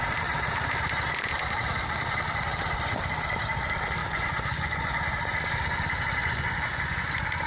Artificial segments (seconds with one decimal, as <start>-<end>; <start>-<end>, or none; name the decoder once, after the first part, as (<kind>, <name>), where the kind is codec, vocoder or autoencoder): 4.0-5.0 (vocoder, Vocos); 6.2-7.1